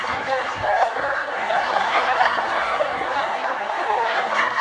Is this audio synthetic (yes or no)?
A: yes